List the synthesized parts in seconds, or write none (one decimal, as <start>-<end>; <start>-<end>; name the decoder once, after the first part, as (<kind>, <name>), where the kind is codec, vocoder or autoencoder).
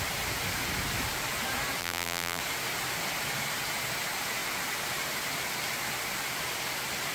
1.8-2.4 (vocoder, BigVGAN v2)